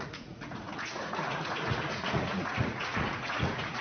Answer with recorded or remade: remade